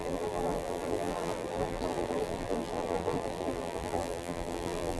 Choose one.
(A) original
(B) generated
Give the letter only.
B